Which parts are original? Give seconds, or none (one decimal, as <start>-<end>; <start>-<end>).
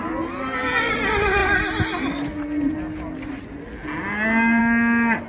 0.0-5.3